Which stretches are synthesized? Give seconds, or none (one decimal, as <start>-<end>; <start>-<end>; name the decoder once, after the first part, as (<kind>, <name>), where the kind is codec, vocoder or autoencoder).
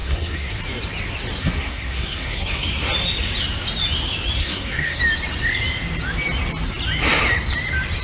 0.0-0.6 (codec, SNAC); 1.4-2.7; 4.4-5.0